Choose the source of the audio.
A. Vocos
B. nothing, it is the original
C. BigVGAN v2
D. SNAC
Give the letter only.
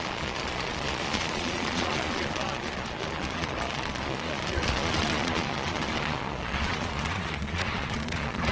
A